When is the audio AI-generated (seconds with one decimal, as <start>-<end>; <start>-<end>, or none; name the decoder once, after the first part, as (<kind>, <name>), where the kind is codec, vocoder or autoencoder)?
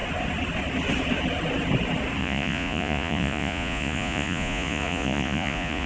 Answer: 2.2-5.9 (vocoder, Vocos)